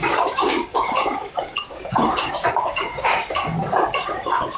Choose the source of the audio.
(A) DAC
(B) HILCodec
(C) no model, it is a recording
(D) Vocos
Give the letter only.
A